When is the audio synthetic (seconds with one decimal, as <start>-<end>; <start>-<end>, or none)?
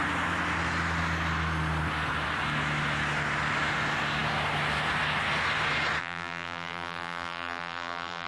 6.0-8.3